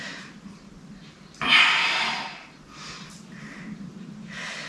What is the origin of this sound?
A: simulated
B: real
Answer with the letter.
A